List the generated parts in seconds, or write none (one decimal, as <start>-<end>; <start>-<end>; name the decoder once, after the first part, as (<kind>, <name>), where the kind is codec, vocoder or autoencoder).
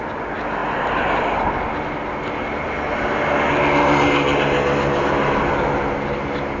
none